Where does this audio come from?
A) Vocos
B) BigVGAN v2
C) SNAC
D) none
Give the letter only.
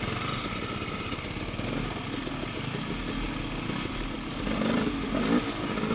D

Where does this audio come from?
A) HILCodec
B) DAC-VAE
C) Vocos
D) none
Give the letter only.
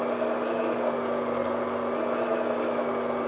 D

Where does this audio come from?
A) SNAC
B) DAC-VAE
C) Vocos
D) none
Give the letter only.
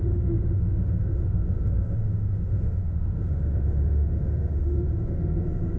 B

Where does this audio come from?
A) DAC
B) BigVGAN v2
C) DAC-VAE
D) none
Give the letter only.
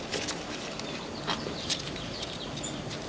D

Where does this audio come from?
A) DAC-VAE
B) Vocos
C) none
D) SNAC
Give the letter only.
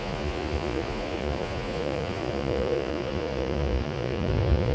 B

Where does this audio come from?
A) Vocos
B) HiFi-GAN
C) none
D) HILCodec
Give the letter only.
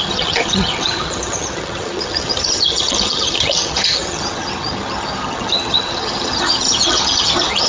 B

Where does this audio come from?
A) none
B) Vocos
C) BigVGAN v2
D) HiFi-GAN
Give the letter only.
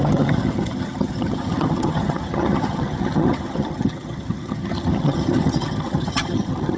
D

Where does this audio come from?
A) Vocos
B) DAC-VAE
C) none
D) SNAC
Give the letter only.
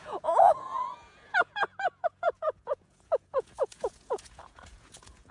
A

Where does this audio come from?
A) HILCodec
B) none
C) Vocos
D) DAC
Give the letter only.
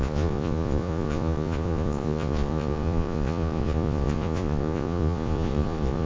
C